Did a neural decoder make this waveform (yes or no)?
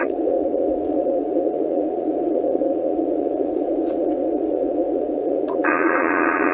yes